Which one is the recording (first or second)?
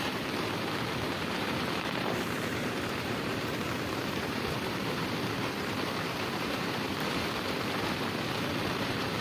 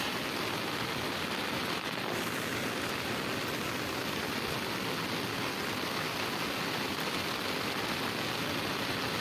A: second